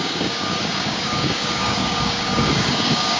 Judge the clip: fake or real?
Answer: fake